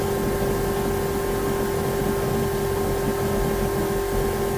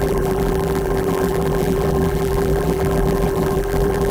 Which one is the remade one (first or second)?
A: second